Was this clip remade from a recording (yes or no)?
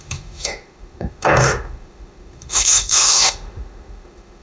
yes